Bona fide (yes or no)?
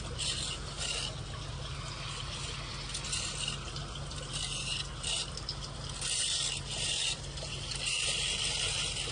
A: yes